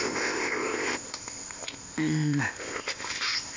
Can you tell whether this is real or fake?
fake